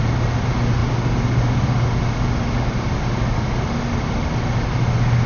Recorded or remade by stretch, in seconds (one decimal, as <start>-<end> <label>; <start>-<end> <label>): 0.0-5.3 recorded